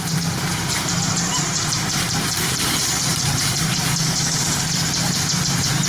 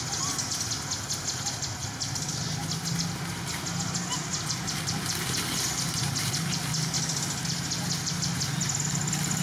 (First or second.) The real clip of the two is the second